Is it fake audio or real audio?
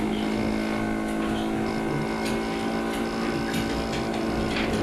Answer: real